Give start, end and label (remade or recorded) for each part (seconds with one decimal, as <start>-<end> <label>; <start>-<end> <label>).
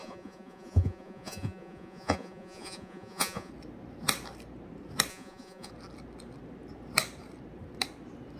0.0-3.5 remade; 3.5-5.1 recorded; 5.1-5.7 remade; 5.7-8.4 recorded